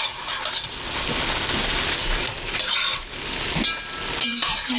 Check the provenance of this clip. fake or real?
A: real